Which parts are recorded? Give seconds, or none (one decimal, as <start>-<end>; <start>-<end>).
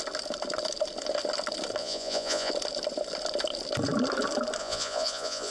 0.0-1.8; 2.5-4.6